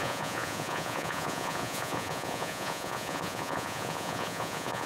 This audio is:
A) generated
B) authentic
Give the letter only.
A